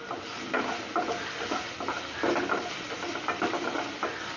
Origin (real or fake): real